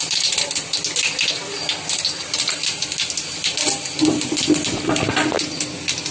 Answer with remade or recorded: recorded